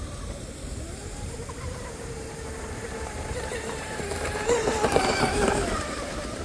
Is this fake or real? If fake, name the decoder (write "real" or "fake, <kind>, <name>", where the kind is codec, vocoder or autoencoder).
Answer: fake, vocoder, BigVGAN v2